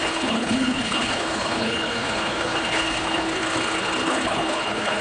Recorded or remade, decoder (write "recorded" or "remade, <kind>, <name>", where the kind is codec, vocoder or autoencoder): remade, codec, HILCodec